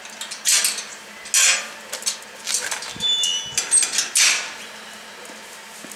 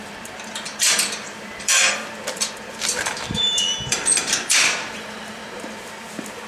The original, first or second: first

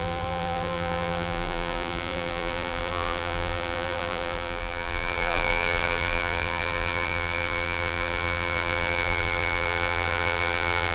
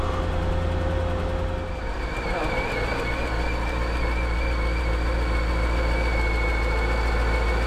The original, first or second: second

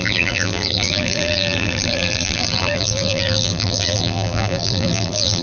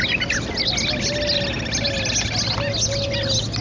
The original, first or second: second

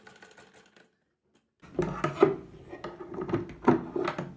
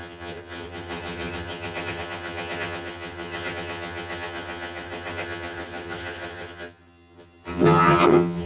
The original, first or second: first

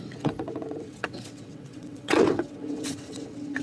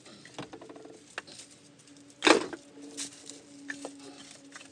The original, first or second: second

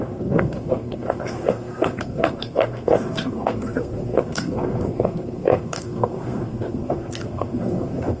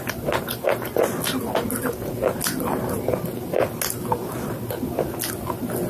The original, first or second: second